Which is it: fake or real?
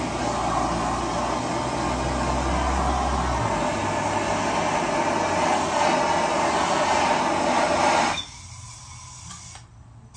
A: real